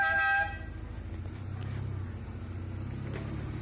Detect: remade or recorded recorded